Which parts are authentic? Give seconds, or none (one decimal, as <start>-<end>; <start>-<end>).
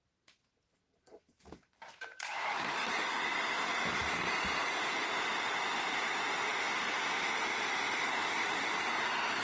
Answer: 2.5-9.4